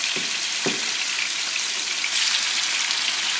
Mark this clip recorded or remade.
recorded